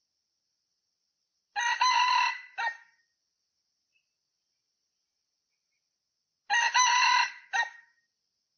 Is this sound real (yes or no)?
yes